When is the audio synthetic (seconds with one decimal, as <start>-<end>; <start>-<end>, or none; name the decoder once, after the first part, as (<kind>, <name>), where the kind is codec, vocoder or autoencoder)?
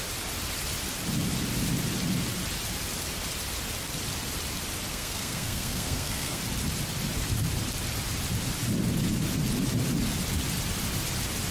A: 4.9-6.4 (codec, SNAC)